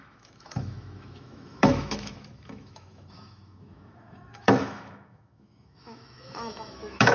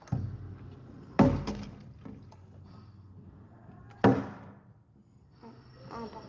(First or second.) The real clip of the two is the second